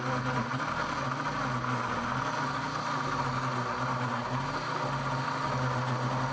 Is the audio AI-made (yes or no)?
no